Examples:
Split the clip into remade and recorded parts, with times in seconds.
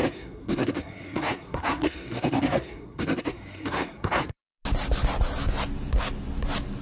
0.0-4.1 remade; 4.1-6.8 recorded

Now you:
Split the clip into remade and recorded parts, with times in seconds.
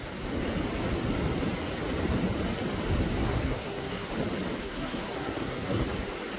0.0-3.2 recorded; 3.2-4.1 remade; 4.1-4.6 recorded; 4.6-5.8 remade; 5.8-6.4 recorded